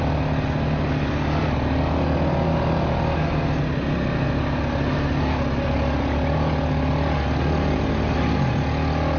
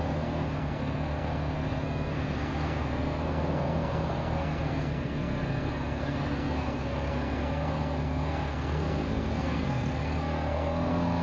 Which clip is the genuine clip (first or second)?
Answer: first